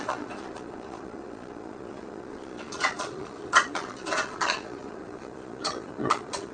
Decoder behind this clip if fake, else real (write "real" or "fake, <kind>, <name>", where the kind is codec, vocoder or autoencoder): fake, vocoder, Vocos